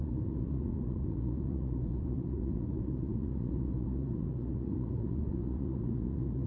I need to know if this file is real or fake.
fake